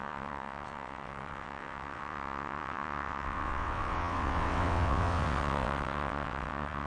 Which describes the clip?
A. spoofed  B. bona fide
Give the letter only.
A